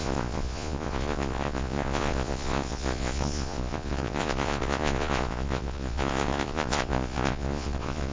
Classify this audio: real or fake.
fake